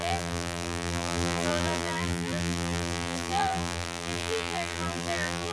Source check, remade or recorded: remade